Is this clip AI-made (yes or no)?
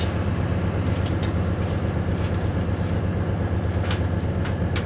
no